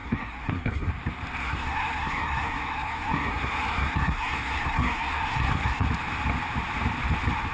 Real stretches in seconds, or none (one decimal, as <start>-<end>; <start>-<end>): 0.9-1.4; 5.9-7.5